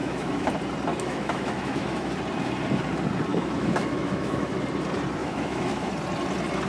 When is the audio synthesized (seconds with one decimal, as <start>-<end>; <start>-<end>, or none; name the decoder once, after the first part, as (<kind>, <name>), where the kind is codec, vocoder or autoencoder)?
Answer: 0.0-0.5 (autoencoder, DAC-VAE); 0.9-2.1; 3.3-4.5; 5.2-5.9